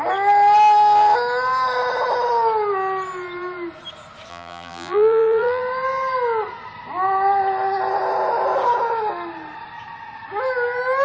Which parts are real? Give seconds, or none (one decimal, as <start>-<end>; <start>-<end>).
0.0-4.3; 5.6-11.0